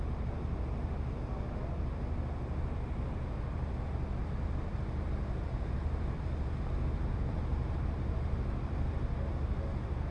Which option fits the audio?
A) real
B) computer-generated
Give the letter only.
A